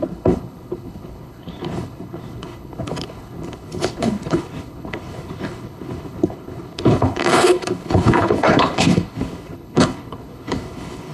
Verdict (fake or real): fake